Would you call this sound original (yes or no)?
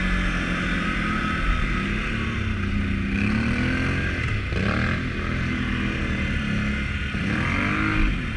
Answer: yes